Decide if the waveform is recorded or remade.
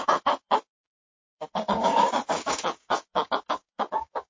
remade